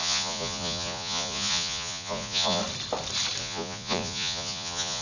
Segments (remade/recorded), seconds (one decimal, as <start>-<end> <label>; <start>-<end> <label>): 0.0-2.6 remade; 2.6-3.4 recorded; 3.4-5.0 remade

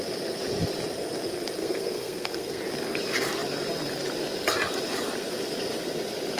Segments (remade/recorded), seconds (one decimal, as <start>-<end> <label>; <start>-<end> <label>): 0.0-1.6 recorded; 1.6-2.6 remade; 2.6-6.4 recorded

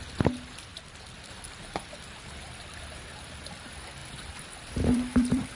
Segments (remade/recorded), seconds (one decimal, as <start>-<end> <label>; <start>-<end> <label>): 0.0-0.7 remade; 0.7-2.3 recorded; 2.3-5.6 remade

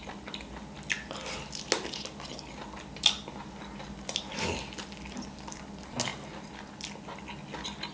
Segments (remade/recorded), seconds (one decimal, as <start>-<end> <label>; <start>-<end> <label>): 0.0-7.9 recorded

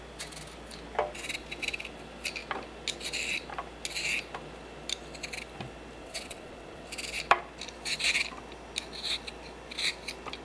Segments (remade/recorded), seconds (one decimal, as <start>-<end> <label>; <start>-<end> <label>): 0.0-6.0 recorded; 6.0-6.9 remade; 6.9-10.4 recorded

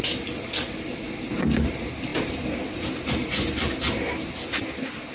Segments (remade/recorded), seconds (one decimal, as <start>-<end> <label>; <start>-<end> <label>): 0.0-2.1 remade; 2.1-5.1 recorded

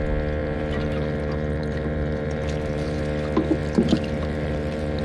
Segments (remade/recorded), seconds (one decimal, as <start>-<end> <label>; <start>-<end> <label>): 0.0-0.4 recorded; 0.4-3.0 remade; 3.0-3.6 recorded; 3.6-5.0 remade

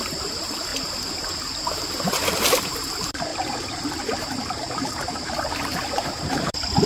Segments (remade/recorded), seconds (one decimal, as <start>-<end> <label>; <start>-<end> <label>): 0.0-0.7 remade; 0.7-2.3 recorded; 2.3-3.3 remade; 3.3-4.0 recorded; 4.0-6.9 remade